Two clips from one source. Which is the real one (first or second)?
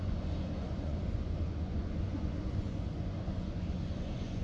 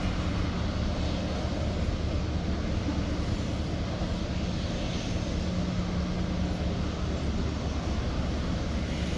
second